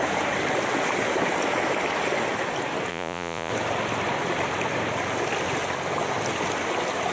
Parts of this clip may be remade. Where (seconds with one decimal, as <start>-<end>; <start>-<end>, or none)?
2.9-3.5